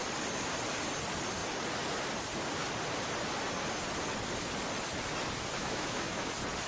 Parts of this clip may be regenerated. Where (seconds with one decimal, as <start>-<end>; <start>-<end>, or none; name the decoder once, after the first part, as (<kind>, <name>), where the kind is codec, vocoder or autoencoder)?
5.6-6.3 (autoencoder, DAC-VAE)